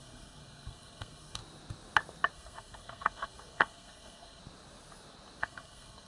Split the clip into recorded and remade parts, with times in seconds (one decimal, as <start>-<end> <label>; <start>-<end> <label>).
0.0-1.4 remade; 1.4-2.3 recorded; 2.3-4.4 remade; 4.4-5.4 recorded; 5.4-6.1 remade